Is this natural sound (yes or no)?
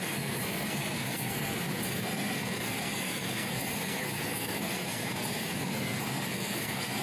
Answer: no